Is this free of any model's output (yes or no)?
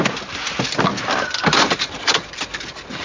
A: yes